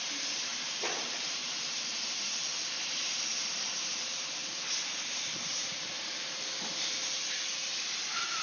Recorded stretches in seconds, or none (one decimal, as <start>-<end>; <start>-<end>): none